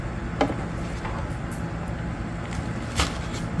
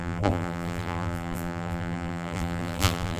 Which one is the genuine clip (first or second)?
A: first